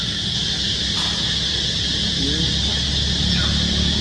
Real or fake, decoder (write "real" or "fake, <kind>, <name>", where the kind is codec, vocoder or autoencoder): real